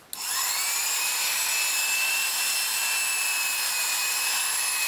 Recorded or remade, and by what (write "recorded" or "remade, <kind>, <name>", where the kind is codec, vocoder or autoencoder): recorded